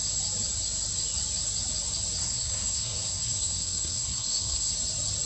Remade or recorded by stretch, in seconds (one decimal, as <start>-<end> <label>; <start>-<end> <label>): 0.0-2.2 recorded; 2.2-4.7 remade; 4.7-5.3 recorded